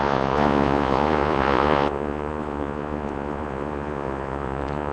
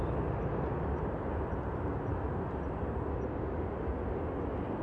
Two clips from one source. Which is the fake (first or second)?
first